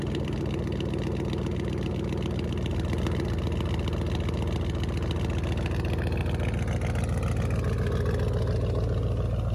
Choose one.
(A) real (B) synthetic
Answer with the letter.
A